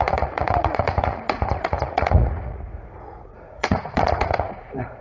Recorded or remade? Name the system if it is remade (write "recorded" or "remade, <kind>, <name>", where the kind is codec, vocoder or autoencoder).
remade, vocoder, Vocos